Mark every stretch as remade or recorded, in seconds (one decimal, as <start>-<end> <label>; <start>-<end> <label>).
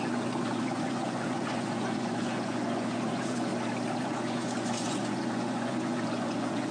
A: 0.0-3.5 remade; 3.5-4.0 recorded; 4.0-6.7 remade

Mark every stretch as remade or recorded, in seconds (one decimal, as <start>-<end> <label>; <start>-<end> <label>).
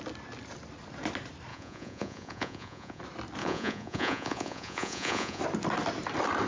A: 0.0-1.5 recorded; 1.5-3.0 remade; 3.0-3.4 recorded; 3.4-5.4 remade; 5.4-6.5 recorded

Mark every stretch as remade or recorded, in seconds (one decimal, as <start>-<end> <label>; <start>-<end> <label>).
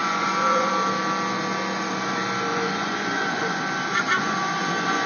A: 0.0-0.7 remade; 0.7-2.5 recorded; 2.5-3.6 remade; 3.6-4.2 recorded; 4.2-5.1 remade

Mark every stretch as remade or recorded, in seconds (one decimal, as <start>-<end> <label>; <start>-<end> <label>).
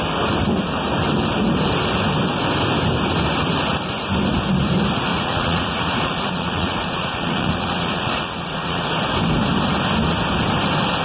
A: 0.0-5.1 recorded; 5.1-8.9 remade; 8.9-11.0 recorded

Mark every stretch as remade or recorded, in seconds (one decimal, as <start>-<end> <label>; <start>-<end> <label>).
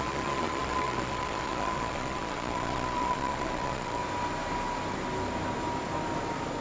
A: 0.0-4.0 remade; 4.0-6.6 recorded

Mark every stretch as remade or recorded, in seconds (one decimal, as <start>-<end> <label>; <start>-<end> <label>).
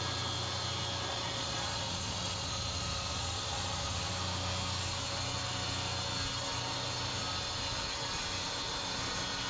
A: 0.0-1.1 recorded; 1.1-4.1 remade; 4.1-9.5 recorded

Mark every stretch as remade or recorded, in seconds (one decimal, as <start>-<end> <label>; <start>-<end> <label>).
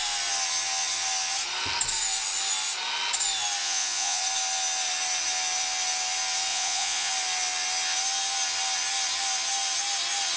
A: 0.0-3.6 recorded; 3.6-4.2 remade; 4.2-6.5 recorded; 6.5-7.1 remade; 7.1-10.4 recorded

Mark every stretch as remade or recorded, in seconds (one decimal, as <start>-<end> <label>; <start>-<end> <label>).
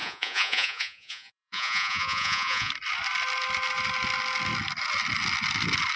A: 0.0-2.7 remade; 2.7-6.0 recorded